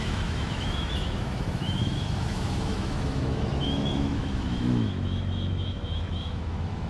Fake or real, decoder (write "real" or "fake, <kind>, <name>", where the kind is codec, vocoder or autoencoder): fake, autoencoder, DAC-VAE